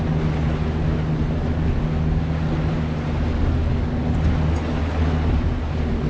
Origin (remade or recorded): recorded